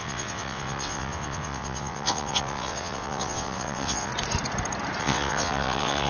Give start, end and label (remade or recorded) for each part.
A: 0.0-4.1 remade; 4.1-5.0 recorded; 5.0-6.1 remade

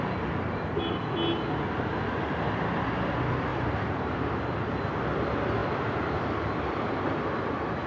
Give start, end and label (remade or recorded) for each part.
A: 0.0-3.5 recorded; 3.5-4.4 remade; 4.4-5.6 recorded; 5.6-6.2 remade; 6.2-7.9 recorded

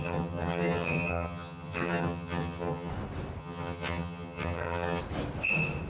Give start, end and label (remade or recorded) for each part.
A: 0.0-2.9 remade; 2.9-3.4 recorded; 3.4-5.0 remade; 5.0-5.9 recorded

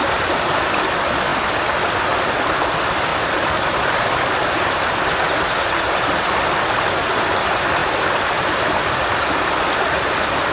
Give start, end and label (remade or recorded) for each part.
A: 0.0-0.6 remade; 0.6-3.1 recorded; 3.1-4.1 remade; 4.1-7.8 recorded; 7.8-9.3 remade; 9.3-10.5 recorded

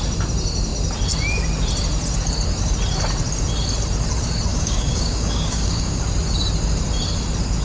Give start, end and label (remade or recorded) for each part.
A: 0.0-4.5 recorded; 4.5-6.0 remade; 6.0-7.6 recorded